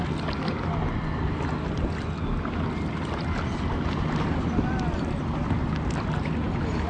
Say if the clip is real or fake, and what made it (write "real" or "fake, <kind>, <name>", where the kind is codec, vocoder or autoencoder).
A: real